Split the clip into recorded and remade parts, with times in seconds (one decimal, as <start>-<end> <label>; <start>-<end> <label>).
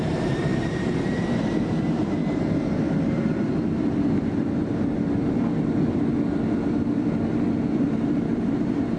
0.0-2.2 remade; 2.2-3.1 recorded; 3.1-3.5 remade; 3.5-7.5 recorded; 7.5-9.0 remade